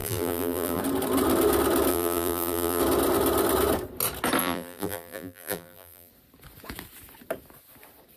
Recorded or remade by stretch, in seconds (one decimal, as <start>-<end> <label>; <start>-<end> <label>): 0.0-0.8 remade; 0.8-1.9 recorded; 1.9-2.8 remade; 2.8-4.4 recorded; 4.4-6.1 remade; 6.1-8.2 recorded